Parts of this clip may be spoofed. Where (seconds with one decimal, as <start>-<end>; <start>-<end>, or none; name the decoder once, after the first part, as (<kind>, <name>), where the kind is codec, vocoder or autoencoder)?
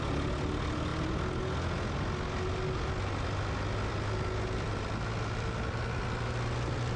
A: none